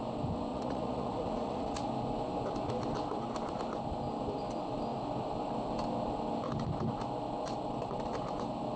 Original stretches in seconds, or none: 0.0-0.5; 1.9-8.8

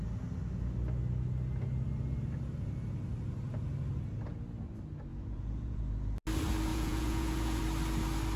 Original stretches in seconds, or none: 0.0-5.1; 5.8-6.7; 7.6-8.4

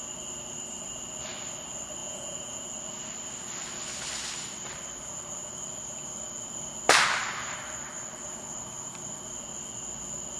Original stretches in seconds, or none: 0.0-2.0; 2.6-10.4

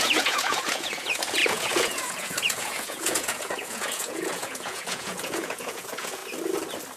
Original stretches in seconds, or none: 6.2-7.0

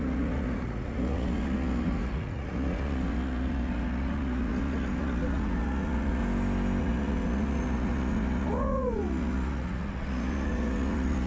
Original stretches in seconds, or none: 6.2-6.8

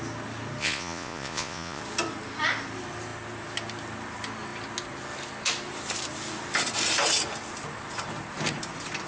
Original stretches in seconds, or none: 0.0-0.6; 1.8-9.1

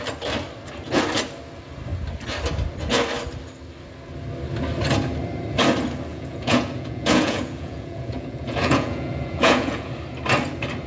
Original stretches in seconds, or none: 0.0-6.1; 9.9-10.9